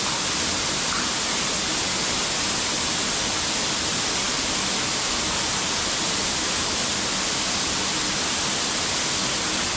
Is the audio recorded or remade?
recorded